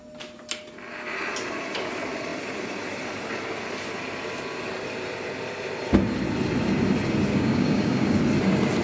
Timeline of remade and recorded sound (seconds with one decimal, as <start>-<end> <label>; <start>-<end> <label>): 0.0-7.3 recorded; 7.3-8.2 remade; 8.2-8.8 recorded